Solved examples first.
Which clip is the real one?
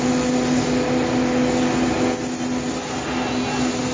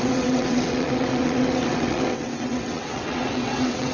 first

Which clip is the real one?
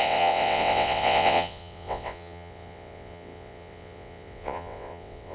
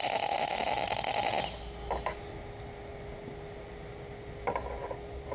second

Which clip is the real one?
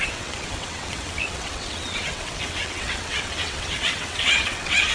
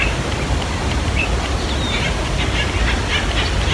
second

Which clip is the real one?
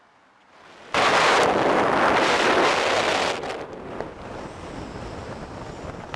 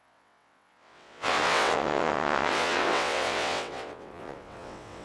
first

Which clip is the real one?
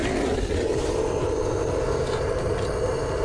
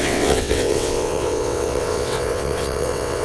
first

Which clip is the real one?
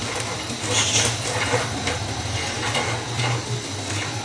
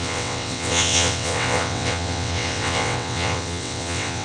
first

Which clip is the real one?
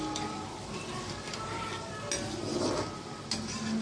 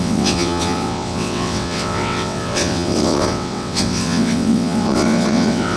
first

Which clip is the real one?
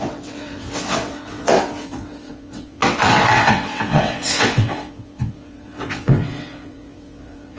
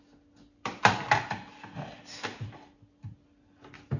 second